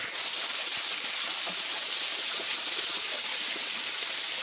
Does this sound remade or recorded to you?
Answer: recorded